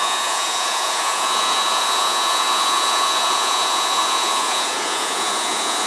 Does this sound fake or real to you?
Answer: fake